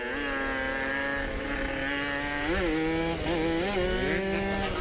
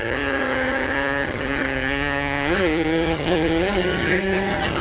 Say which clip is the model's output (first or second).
second